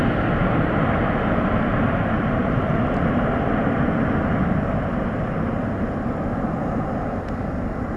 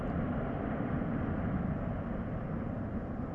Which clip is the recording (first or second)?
first